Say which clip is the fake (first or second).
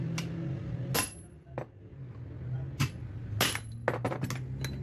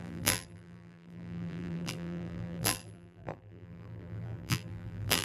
second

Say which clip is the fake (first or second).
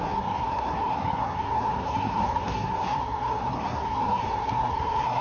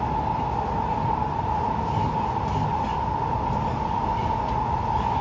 first